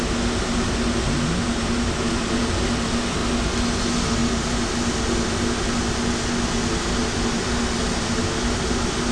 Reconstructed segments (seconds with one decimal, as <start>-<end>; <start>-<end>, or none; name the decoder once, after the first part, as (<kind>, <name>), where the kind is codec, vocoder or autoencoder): none